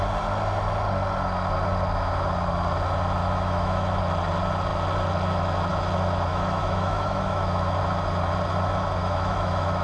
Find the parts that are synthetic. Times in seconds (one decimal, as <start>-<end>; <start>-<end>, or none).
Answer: 3.2-4.0; 6.3-7.8; 9.0-9.8